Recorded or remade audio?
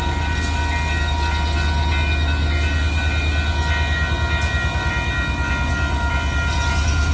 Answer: recorded